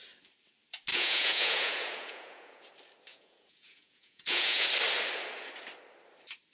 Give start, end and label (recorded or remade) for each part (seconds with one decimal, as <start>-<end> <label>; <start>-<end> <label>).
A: 0.0-0.9 recorded; 0.9-2.7 remade; 2.7-3.1 recorded; 3.1-4.7 remade; 4.7-6.5 recorded